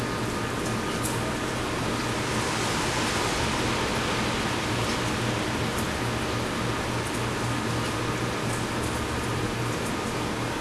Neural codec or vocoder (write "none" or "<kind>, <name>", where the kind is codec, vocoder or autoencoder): none